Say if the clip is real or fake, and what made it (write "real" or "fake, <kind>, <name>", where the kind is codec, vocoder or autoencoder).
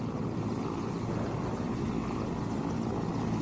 real